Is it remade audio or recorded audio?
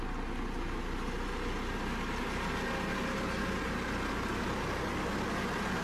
recorded